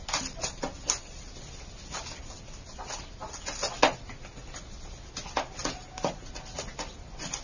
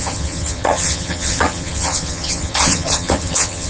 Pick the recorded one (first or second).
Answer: first